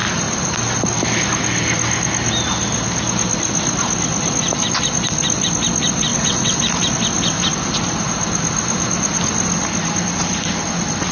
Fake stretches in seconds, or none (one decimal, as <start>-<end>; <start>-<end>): 6.1-6.6

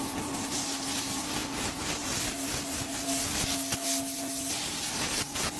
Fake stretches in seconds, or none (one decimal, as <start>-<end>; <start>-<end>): none

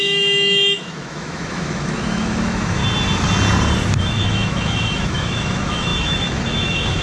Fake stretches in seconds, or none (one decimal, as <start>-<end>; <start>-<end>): 0.0-2.8; 4.0-7.0

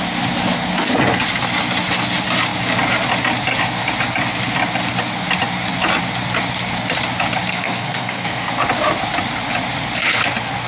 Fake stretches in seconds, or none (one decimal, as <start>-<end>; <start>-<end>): 7.5-8.5

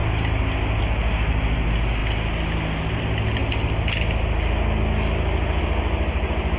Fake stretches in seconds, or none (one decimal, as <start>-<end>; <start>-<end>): none